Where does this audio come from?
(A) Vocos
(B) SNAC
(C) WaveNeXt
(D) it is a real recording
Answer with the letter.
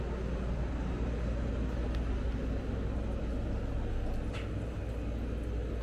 D